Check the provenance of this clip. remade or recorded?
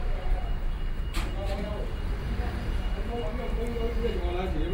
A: recorded